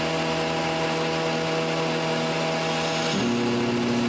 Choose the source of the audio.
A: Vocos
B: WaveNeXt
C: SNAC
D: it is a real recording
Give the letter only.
D